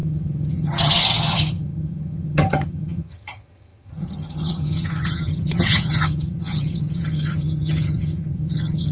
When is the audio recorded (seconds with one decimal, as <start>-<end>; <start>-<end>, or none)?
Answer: none